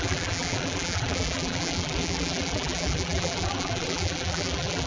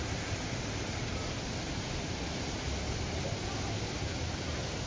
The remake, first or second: first